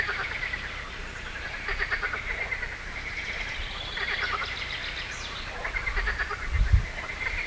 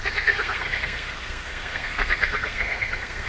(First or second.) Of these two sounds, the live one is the first